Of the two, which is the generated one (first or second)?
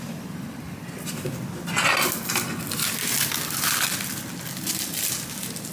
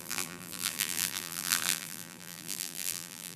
second